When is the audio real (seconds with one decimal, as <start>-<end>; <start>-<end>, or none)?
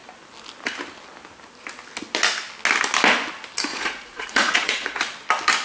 0.0-3.7; 5.0-5.6